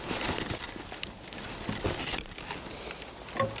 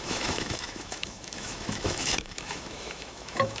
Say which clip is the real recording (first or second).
first